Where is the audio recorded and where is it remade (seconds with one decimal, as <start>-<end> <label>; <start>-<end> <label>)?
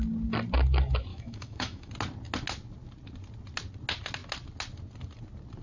0.0-1.1 recorded; 1.1-1.9 remade; 1.9-5.6 recorded